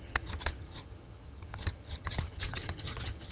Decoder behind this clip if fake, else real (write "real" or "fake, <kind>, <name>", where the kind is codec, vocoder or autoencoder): fake, vocoder, HiFi-GAN